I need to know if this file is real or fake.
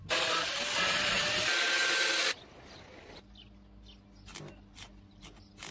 real